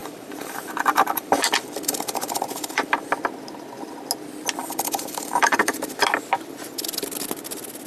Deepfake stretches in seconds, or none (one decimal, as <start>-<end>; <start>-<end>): 0.0-3.1; 4.6-5.7